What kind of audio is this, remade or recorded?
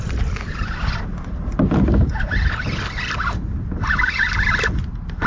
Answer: recorded